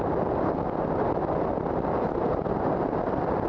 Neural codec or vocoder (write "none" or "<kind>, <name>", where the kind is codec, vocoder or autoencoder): none